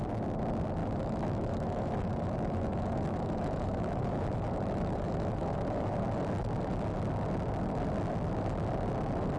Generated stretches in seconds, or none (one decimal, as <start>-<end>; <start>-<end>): 0.8-6.0

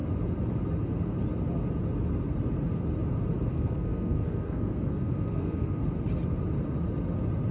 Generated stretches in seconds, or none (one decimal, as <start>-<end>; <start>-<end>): 3.5-5.8

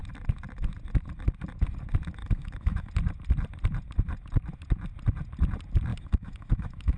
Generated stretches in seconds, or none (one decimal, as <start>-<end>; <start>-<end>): 2.2-2.9; 5.9-7.0

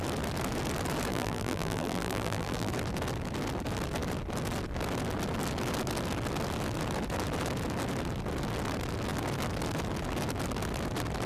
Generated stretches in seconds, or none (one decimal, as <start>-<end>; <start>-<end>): 1.1-2.7

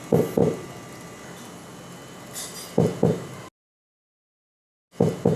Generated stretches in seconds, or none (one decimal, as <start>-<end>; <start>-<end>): none

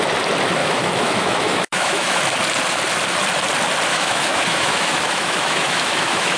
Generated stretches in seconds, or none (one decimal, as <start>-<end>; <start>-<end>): 0.6-2.2; 3.9-6.4

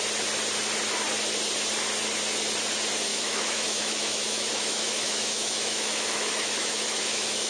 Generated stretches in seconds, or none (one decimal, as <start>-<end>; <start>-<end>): 3.1-7.5